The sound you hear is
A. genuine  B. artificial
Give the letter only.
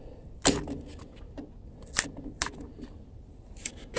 A